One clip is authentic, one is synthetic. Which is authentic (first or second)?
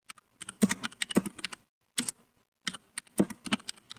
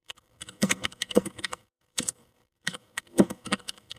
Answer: first